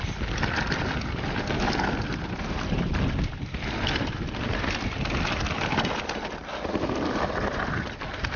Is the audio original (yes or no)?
yes